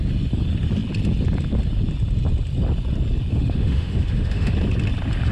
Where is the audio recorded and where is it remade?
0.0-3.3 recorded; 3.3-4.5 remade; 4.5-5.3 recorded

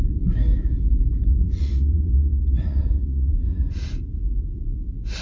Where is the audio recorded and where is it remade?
0.0-1.3 recorded; 1.3-3.7 remade; 3.7-5.2 recorded

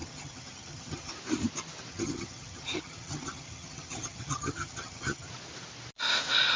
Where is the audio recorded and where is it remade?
0.0-1.1 remade; 1.1-1.9 recorded; 1.9-5.3 remade; 5.3-6.6 recorded

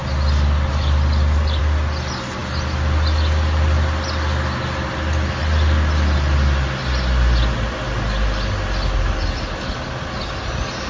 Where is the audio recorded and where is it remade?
0.0-10.9 recorded

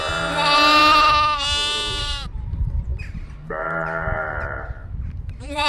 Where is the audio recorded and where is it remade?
0.0-0.8 remade; 0.8-2.0 recorded; 2.0-5.7 remade

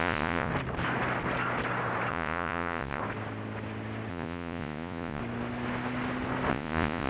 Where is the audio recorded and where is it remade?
0.0-0.5 remade; 0.5-2.1 recorded; 2.1-3.0 remade; 3.0-4.1 recorded; 4.1-5.2 remade; 5.2-6.5 recorded; 6.5-7.1 remade